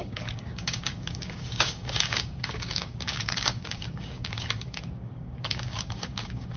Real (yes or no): no